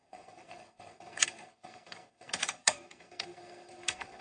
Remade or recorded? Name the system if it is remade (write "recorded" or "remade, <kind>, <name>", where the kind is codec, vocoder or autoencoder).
remade, codec, SNAC